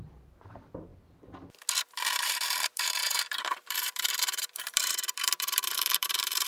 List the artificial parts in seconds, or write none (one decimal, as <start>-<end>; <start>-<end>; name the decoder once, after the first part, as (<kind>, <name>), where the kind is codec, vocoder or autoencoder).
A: 0.0-0.9 (vocoder, BigVGAN v2); 1.7-6.5